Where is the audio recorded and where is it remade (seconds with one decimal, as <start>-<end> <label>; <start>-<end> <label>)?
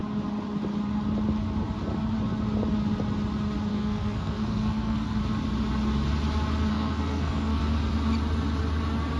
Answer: 0.0-3.7 recorded; 3.7-5.2 remade; 5.2-6.7 recorded; 6.7-7.6 remade; 7.6-9.2 recorded